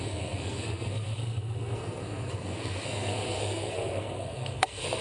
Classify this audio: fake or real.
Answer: fake